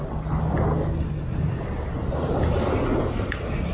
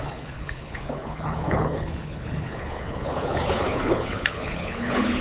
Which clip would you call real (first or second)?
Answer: first